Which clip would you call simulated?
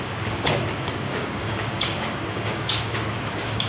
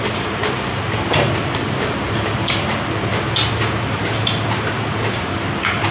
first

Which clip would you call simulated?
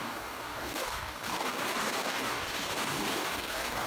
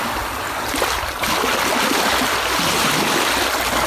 first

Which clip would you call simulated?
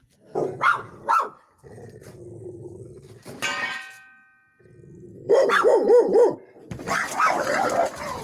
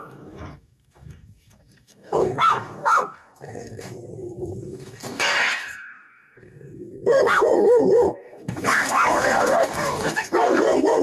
second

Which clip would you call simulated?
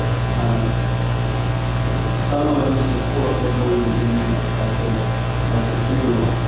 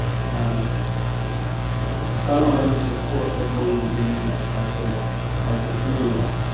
second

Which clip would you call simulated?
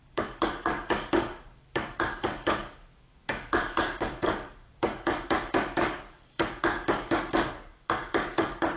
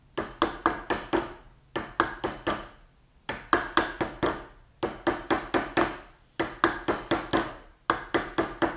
first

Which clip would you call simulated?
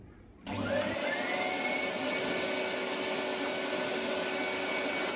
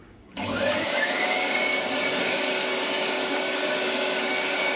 second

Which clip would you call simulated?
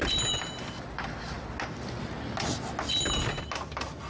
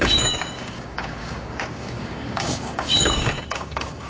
second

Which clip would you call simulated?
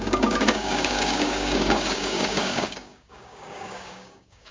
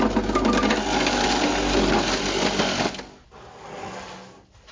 first